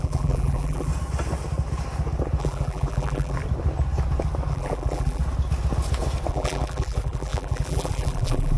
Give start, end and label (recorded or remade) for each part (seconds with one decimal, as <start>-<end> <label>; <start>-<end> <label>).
0.0-0.9 remade; 0.9-2.4 recorded; 2.4-3.4 remade; 3.4-4.5 recorded; 4.5-5.2 remade; 5.2-6.3 recorded; 6.3-8.6 remade